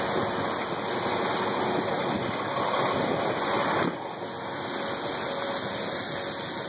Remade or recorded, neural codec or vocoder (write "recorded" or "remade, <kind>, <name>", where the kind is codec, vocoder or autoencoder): recorded